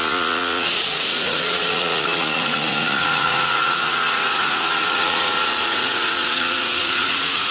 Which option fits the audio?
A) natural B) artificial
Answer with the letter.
B